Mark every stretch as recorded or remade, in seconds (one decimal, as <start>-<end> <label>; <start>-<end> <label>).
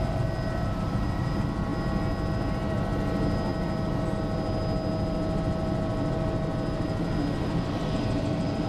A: 0.0-8.7 recorded